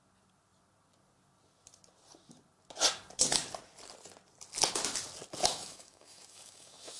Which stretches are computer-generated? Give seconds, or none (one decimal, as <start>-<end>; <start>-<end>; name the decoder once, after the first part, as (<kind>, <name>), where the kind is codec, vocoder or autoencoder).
5.4-7.0 (autoencoder, DAC-VAE)